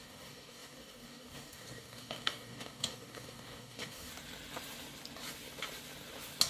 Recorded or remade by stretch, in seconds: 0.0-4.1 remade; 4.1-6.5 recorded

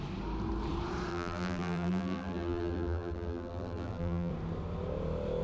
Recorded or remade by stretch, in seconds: 0.0-1.1 recorded; 1.1-4.3 remade; 4.3-5.4 recorded

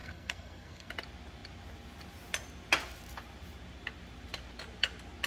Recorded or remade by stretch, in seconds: 0.0-0.9 remade; 0.9-5.3 recorded

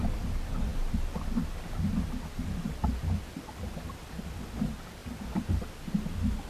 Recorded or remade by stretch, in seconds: 0.0-6.5 recorded

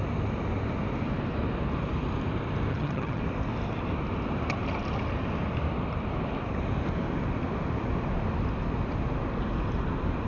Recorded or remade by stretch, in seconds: 0.0-2.7 recorded; 2.7-3.2 remade; 3.2-10.3 recorded